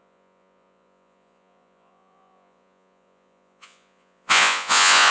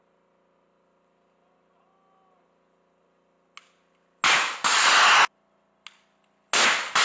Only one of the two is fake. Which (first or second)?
first